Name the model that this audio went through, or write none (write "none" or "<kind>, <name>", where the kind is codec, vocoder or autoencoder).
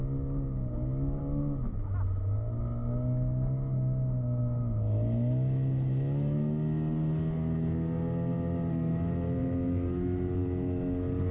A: none